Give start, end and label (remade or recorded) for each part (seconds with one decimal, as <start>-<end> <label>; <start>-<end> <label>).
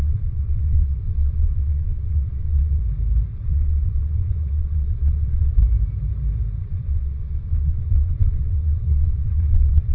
0.0-2.8 remade; 2.8-3.3 recorded; 3.3-5.6 remade; 5.6-6.6 recorded; 6.6-9.9 remade